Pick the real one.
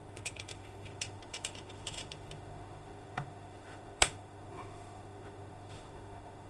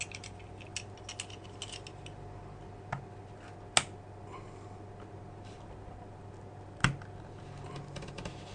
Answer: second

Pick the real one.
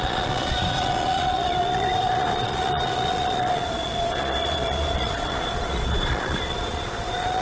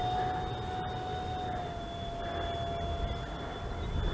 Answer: second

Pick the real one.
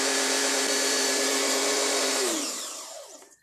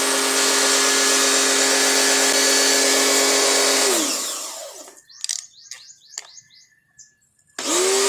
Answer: second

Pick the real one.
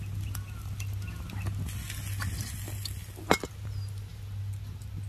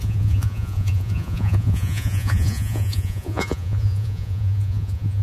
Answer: first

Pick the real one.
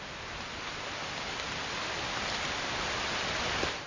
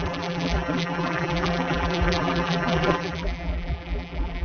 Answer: first